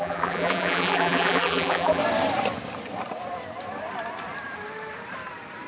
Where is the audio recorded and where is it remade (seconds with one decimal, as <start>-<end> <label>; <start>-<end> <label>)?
0.0-2.0 remade; 2.0-5.7 recorded